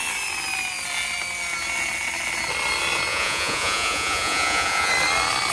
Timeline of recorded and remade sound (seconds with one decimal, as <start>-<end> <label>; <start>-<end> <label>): 0.0-3.1 recorded; 3.1-4.9 remade; 4.9-5.5 recorded

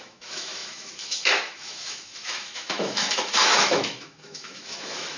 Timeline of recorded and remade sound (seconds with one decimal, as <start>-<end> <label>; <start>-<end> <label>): 0.0-5.2 remade

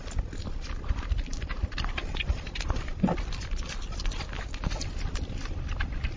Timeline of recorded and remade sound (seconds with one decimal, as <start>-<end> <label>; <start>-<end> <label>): 0.0-6.2 recorded

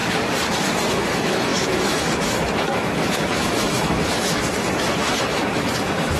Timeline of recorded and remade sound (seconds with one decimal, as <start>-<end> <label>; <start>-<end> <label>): 0.0-0.9 recorded; 0.9-6.2 remade